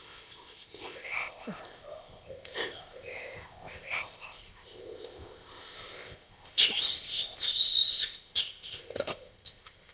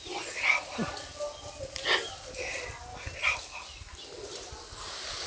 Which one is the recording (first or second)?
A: second